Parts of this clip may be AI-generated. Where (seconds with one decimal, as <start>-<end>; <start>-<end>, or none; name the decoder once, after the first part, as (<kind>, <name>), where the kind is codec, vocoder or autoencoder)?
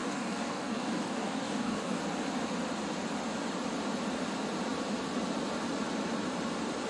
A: 0.0-2.0 (codec, DAC)